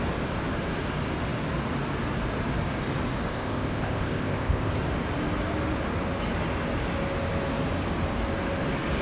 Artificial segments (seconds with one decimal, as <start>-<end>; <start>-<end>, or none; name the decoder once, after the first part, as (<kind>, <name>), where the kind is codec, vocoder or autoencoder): 3.3-4.7 (codec, ZipCodec)